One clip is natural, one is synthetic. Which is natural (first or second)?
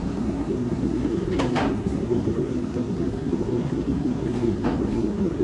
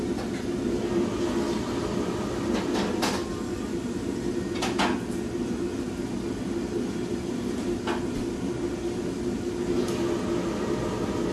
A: second